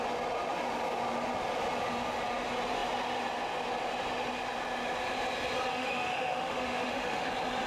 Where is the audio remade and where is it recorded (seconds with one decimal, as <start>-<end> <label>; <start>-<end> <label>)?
0.0-5.7 recorded; 5.7-7.3 remade; 7.3-7.7 recorded